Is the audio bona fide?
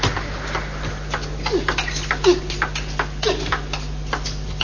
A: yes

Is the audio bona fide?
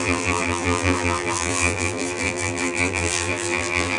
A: no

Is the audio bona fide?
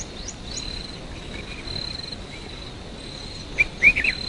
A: yes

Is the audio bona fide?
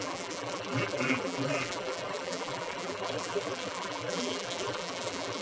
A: no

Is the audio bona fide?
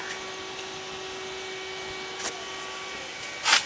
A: yes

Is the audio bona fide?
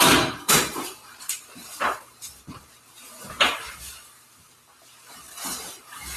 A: no